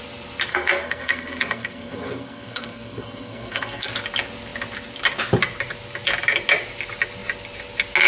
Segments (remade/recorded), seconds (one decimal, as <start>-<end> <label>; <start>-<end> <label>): 0.0-0.5 recorded; 0.5-3.9 remade; 3.9-8.1 recorded